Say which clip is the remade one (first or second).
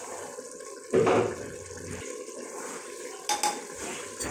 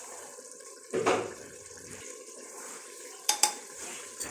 second